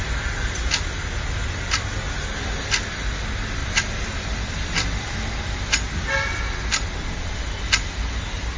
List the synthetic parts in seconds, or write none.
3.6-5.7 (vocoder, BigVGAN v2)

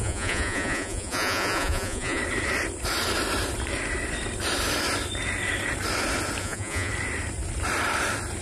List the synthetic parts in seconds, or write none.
0.0-2.2 (vocoder, Vocos); 6.4-6.9

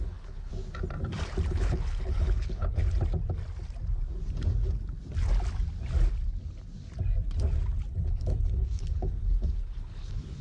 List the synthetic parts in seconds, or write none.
0.0-0.5 (codec, HILCodec); 1.5-2.8; 7.9-10.4

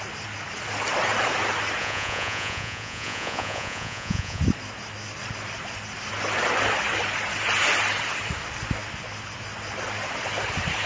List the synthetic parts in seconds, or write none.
1.8-4.4 (vocoder, Vocos)

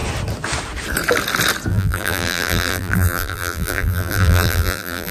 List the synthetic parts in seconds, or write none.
1.7-5.1 (vocoder, BigVGAN v2)

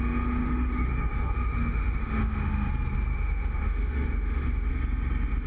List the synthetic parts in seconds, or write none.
0.4-2.7 (autoencoder, DAC-VAE); 3.1-4.7

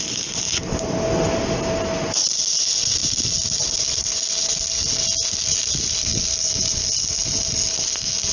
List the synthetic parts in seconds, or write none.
none